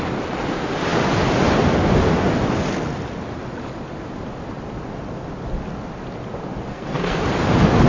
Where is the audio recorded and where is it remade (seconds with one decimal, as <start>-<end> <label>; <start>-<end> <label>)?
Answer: 0.0-6.7 recorded; 6.7-7.2 remade; 7.2-7.9 recorded